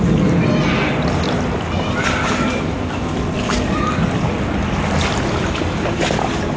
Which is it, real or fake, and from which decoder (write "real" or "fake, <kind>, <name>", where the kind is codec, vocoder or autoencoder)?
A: real